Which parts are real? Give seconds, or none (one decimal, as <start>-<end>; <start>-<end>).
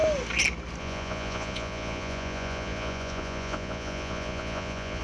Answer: 0.0-0.8